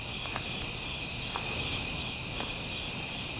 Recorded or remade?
recorded